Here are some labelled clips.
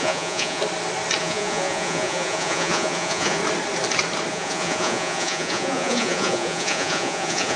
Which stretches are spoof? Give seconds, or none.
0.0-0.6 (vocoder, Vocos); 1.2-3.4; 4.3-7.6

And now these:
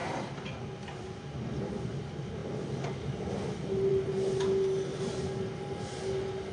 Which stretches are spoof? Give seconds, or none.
none